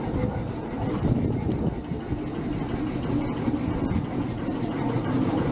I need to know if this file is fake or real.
real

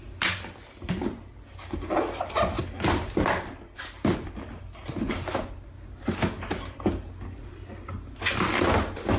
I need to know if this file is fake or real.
real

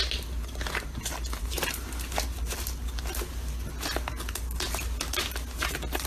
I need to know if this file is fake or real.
real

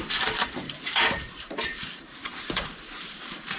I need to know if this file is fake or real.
fake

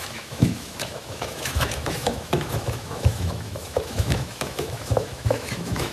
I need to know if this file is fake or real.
fake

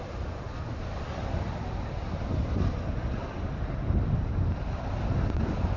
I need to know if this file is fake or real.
real